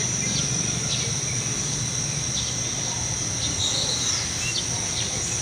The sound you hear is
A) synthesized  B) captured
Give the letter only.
B